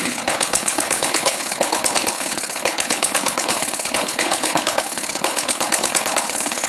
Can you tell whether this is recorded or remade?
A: remade